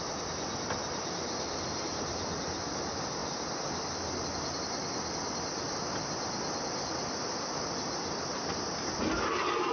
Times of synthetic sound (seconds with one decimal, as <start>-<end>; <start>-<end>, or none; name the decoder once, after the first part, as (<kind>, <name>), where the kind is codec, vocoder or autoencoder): none